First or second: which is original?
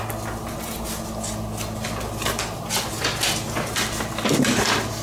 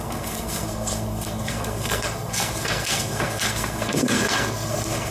first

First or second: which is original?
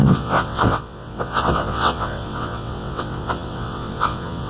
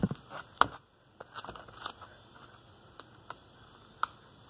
second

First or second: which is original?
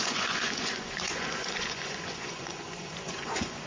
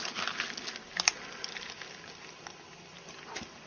second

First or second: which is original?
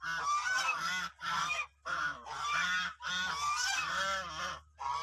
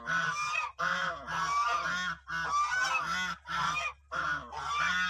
second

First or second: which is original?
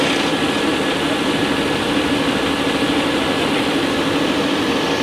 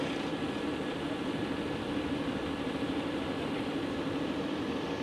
first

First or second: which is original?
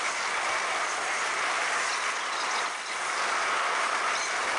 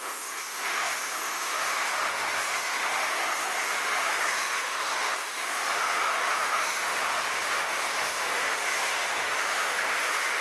first